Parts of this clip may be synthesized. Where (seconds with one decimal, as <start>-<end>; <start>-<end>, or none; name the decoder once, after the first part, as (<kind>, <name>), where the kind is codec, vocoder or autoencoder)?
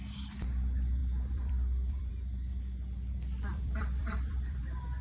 1.0-2.1 (vocoder, BigVGAN v2); 3.5-4.6